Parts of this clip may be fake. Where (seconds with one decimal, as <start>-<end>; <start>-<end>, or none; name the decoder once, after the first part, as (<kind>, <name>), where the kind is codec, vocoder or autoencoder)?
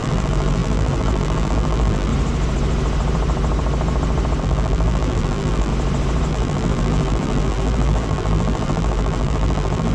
0.0-2.1 (vocoder, BigVGAN v2); 4.4-5.7; 6.3-9.9